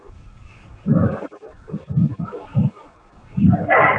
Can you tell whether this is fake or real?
fake